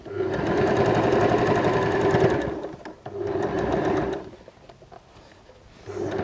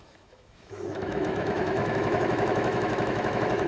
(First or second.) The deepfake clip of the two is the second